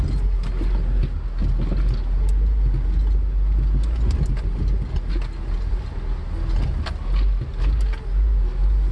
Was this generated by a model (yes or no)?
no